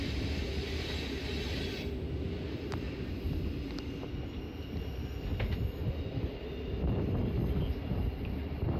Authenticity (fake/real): real